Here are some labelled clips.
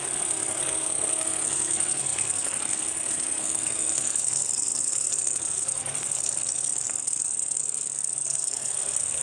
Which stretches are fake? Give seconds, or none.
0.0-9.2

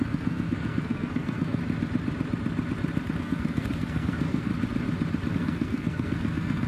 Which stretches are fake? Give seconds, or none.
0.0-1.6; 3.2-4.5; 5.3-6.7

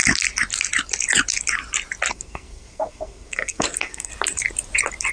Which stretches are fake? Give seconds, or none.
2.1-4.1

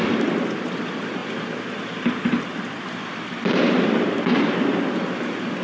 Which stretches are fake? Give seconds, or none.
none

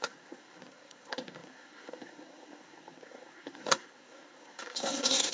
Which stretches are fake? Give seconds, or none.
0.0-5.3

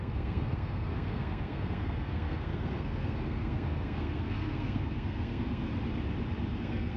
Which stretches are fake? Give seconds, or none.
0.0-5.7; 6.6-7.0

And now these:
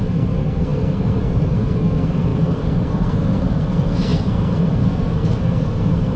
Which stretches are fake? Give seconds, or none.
0.0-6.2

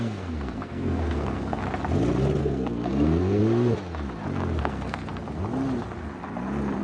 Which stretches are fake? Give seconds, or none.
0.0-1.6; 2.4-3.4; 4.6-5.1